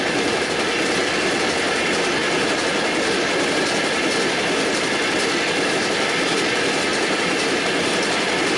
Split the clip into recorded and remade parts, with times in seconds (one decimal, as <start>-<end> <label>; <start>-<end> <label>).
0.0-8.6 recorded